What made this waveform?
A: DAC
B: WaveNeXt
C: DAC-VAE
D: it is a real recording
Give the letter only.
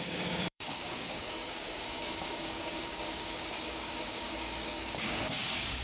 A